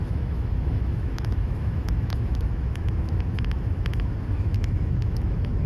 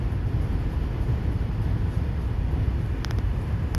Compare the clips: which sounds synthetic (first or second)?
first